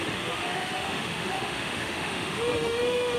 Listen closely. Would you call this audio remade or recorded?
remade